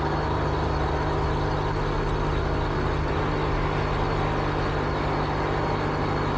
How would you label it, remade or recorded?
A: recorded